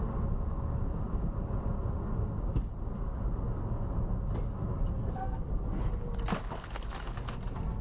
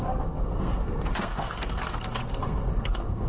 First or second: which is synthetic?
second